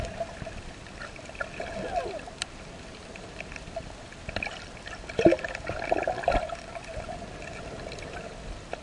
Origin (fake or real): real